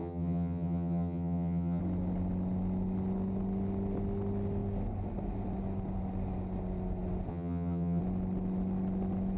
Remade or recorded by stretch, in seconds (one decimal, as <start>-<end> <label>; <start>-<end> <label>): 0.0-1.8 remade; 1.8-7.3 recorded; 7.3-8.0 remade; 8.0-9.4 recorded